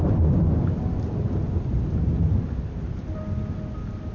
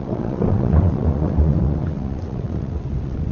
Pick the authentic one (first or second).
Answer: first